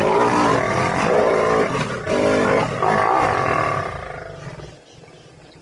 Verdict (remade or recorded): recorded